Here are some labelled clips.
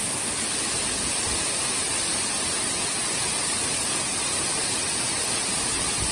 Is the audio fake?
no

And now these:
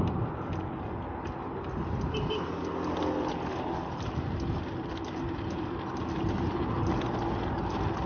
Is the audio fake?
no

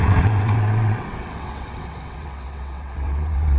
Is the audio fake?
yes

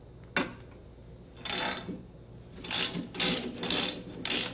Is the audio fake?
no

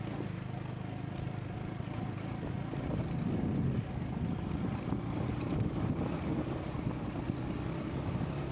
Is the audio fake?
no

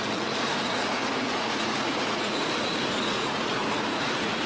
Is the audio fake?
yes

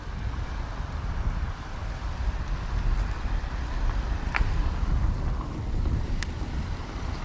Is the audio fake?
no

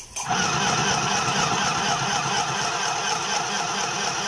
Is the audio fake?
no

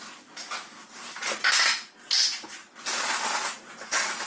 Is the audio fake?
no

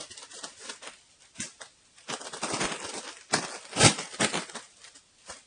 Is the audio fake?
no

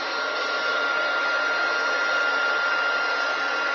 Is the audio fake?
no